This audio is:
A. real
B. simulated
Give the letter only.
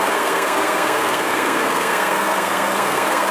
B